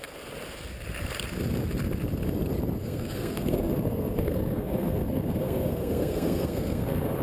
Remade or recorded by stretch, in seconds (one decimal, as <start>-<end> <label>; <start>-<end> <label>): 0.0-2.8 recorded; 2.8-7.2 remade